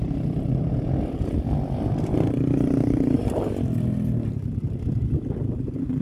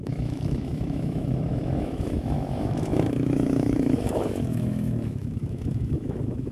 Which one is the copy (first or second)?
second